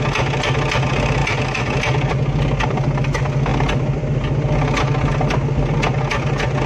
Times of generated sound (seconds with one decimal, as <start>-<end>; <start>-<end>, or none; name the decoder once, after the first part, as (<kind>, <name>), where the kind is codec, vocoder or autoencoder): none